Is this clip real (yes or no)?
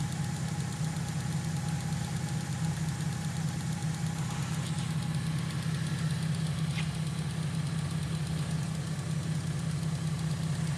yes